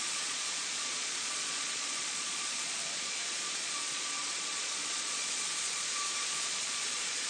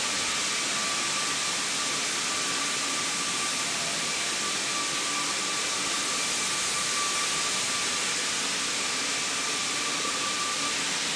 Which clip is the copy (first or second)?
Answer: first